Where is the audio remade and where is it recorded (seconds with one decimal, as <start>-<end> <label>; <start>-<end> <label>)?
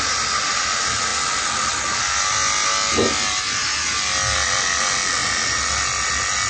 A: 0.0-6.5 recorded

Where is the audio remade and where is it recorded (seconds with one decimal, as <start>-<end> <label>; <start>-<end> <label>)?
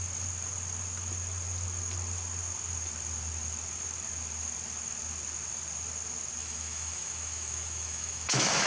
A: 0.0-6.4 recorded; 6.4-8.7 remade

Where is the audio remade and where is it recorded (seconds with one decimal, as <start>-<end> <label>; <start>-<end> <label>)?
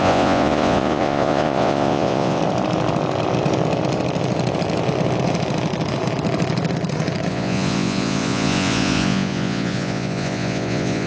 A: 0.0-2.4 remade; 2.4-7.3 recorded; 7.3-11.1 remade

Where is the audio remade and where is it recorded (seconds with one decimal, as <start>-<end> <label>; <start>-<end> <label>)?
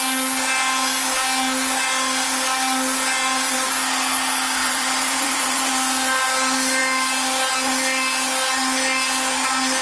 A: 0.0-4.6 recorded; 4.6-5.7 remade; 5.7-9.8 recorded